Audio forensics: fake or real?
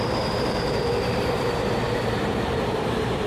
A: fake